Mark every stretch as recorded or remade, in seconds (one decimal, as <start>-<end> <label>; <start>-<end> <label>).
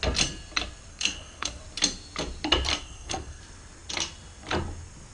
0.0-0.9 recorded; 0.9-1.6 remade; 1.6-2.7 recorded; 2.7-3.4 remade; 3.4-5.1 recorded